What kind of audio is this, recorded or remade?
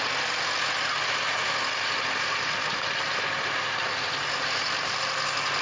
recorded